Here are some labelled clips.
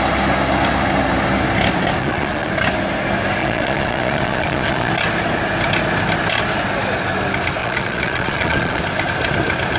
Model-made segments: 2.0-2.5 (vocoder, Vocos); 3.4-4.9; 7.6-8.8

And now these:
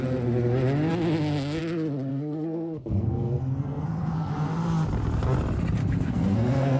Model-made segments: 2.1-4.3 (codec, SNAC); 5.8-6.8